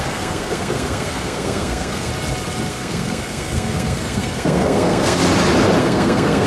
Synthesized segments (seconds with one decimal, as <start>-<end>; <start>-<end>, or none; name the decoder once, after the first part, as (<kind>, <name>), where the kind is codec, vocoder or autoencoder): 0.0-2.1 (codec, SNAC); 2.7-5.2; 5.8-6.5